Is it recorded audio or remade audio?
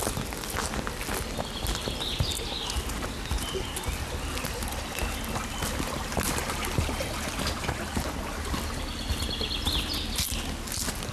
recorded